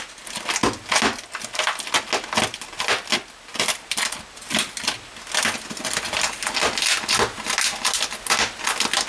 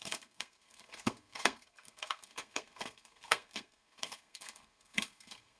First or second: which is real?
first